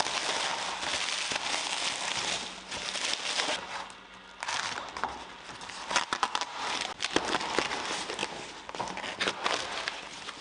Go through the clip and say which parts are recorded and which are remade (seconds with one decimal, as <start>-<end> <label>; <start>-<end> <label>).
0.0-10.4 recorded